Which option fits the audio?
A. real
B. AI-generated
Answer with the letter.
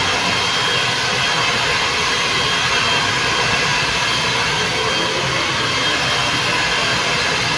A